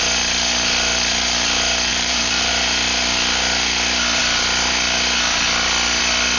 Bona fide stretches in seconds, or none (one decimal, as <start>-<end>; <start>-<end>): 0.0-1.9; 2.5-6.4